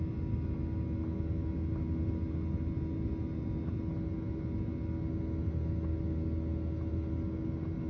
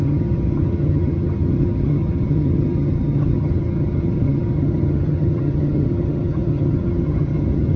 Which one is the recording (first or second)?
first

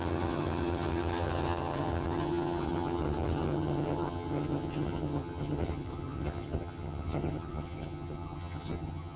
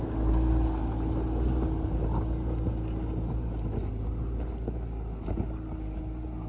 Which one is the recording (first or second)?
second